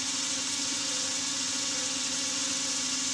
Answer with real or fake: fake